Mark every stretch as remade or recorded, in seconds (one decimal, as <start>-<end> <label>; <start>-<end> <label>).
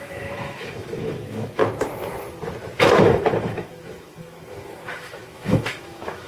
0.0-1.6 remade; 1.6-2.8 recorded; 2.8-6.3 remade